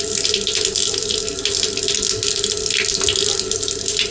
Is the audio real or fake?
real